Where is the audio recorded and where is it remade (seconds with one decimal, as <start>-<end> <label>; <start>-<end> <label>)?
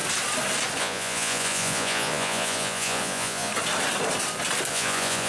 0.0-0.8 recorded; 0.8-3.5 remade; 3.5-4.7 recorded; 4.7-5.3 remade